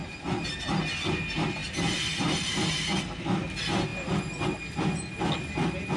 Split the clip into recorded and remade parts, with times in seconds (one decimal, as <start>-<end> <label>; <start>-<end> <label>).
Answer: 0.0-1.1 recorded; 1.1-1.6 remade; 1.6-3.0 recorded; 3.0-3.9 remade; 3.9-4.4 recorded; 4.4-6.0 remade